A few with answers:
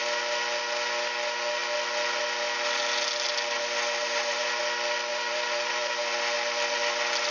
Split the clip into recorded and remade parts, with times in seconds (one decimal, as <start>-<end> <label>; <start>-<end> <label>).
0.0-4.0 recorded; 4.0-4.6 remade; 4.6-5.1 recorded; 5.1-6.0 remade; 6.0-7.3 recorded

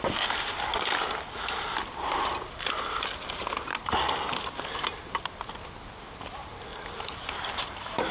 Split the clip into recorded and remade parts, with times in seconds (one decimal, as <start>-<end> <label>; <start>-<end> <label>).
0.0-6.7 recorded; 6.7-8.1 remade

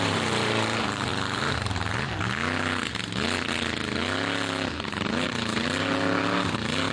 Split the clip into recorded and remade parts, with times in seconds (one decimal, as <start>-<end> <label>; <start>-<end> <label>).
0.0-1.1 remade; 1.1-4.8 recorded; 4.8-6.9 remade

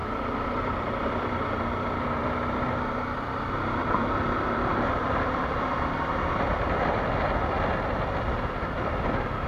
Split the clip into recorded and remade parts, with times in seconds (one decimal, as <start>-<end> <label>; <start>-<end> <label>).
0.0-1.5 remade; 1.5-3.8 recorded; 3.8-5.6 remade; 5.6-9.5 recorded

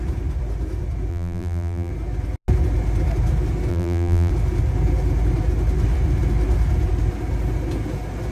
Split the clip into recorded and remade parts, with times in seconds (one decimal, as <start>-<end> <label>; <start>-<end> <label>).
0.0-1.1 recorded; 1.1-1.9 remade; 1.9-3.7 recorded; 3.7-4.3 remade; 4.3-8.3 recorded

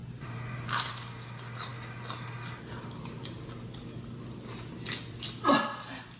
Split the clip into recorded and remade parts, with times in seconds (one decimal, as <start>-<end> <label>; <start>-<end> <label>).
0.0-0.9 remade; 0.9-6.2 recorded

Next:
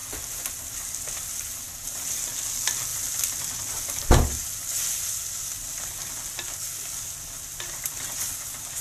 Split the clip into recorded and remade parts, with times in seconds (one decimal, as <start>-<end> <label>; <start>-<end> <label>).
0.0-2.9 recorded; 2.9-4.2 remade; 4.2-8.8 recorded

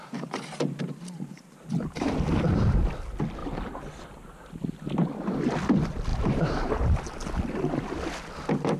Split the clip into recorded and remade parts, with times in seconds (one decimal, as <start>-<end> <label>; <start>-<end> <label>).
0.0-0.8 remade; 0.8-3.4 recorded; 3.4-4.0 remade; 4.0-6.1 recorded; 6.1-7.0 remade; 7.0-8.8 recorded